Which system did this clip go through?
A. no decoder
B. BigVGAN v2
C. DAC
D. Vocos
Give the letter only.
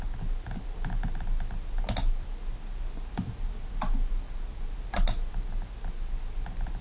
A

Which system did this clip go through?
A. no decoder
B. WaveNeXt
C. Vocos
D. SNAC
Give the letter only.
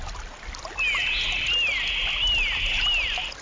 A